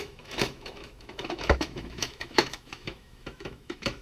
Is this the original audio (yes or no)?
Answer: no